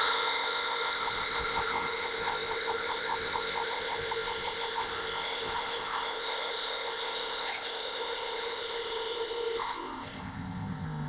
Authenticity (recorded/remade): remade